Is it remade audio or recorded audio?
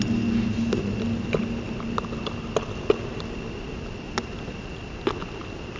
recorded